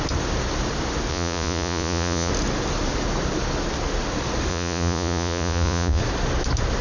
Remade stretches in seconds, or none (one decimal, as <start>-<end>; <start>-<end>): 1.1-2.3; 4.5-6.0